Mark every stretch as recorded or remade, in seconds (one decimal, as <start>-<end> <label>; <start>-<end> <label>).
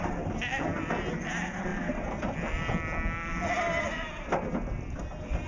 0.0-5.5 recorded